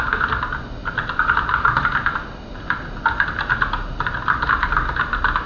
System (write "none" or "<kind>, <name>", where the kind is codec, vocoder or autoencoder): none